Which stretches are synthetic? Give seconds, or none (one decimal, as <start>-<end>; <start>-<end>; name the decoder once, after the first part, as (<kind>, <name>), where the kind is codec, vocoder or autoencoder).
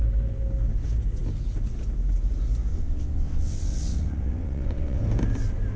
2.7-5.0 (vocoder, WaveNeXt)